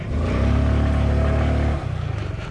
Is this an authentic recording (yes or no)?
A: yes